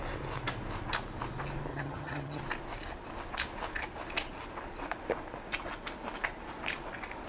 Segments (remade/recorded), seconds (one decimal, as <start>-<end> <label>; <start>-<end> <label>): 0.0-1.7 recorded; 1.7-2.4 remade; 2.4-7.3 recorded